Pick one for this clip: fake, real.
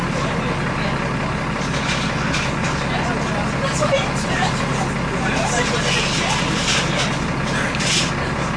real